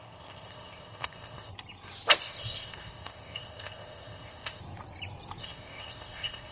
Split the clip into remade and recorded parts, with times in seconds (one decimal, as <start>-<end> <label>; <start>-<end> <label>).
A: 0.0-1.5 remade; 1.5-2.2 recorded; 2.2-4.6 remade; 4.6-5.4 recorded; 5.4-6.5 remade